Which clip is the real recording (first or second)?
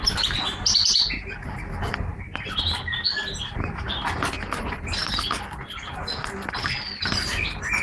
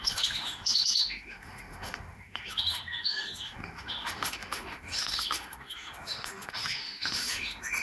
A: first